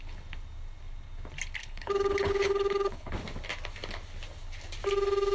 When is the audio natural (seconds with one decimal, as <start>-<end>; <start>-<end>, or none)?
0.0-1.6; 3.1-5.3